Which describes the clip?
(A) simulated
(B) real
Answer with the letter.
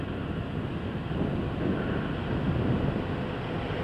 B